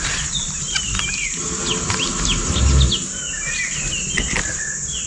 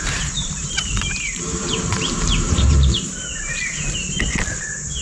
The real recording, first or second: first